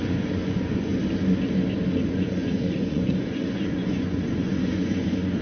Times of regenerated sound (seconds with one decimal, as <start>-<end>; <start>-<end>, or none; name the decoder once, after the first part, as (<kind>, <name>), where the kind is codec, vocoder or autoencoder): 0.0-0.9 (vocoder, Vocos); 2.1-5.4